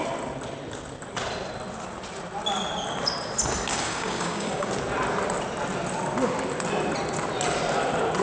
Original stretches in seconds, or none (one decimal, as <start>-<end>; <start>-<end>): 0.0-3.7; 4.7-8.2